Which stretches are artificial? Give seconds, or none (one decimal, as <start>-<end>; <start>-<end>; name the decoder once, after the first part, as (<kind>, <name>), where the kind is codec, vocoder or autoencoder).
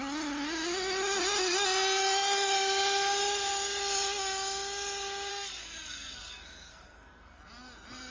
5.3-7.4 (codec, SNAC)